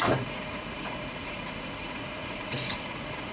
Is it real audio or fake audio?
fake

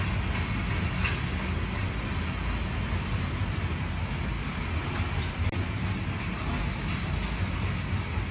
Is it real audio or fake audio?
real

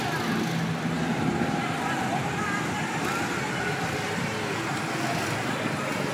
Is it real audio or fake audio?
real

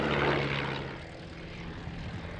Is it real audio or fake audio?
real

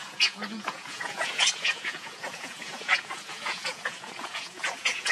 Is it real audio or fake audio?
fake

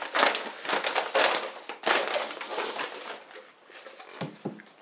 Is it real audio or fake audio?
real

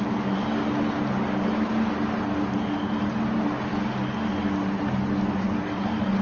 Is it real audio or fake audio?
real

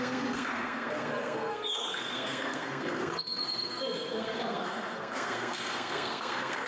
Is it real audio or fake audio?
fake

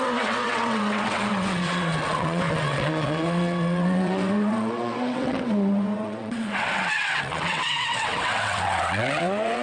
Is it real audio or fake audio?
fake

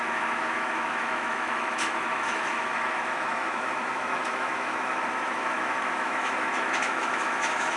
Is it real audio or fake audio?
fake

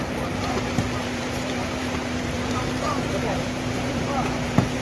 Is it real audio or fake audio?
fake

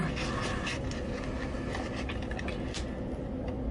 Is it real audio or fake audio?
real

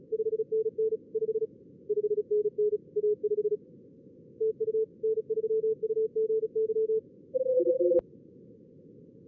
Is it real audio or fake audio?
real